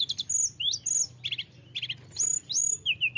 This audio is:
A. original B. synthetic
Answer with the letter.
A